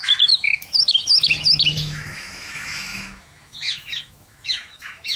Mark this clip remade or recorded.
remade